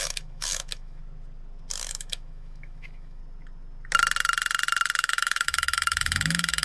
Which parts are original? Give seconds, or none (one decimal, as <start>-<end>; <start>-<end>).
1.0-1.9; 3.2-5.0